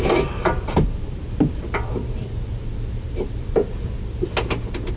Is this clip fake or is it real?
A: real